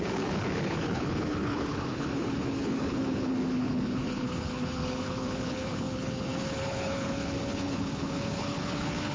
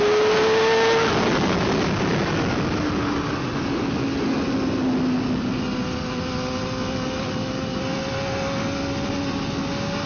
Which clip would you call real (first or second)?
second